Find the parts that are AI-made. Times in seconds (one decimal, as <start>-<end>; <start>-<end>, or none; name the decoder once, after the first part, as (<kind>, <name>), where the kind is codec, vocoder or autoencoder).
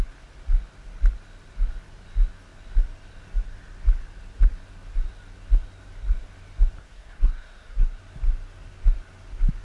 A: 6.8-8.0 (codec, SNAC)